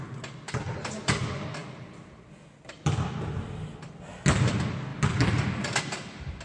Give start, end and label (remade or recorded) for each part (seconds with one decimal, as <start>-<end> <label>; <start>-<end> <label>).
0.0-6.4 recorded